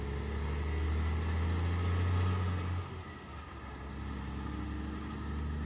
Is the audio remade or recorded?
recorded